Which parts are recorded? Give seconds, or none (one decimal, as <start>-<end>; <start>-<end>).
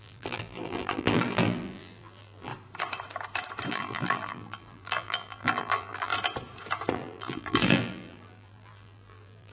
2.5-3.7; 6.1-6.9